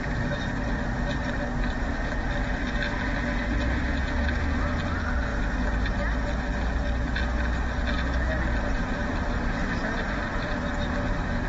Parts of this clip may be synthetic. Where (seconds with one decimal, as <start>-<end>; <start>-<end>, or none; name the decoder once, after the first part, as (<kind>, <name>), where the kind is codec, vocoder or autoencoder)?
none